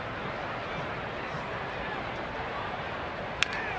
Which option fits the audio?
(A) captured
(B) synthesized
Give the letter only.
A